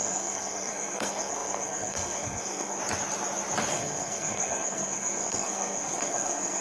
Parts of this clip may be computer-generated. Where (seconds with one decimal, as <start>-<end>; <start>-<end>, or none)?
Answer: 0.0-2.8; 3.7-6.6